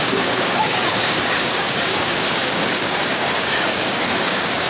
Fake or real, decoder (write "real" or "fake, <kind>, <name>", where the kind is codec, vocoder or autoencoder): fake, codec, DAC